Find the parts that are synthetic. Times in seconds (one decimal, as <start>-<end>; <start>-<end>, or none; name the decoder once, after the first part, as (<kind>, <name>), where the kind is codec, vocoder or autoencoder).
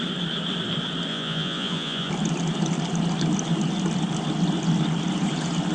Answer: 1.1-2.1 (vocoder, Vocos)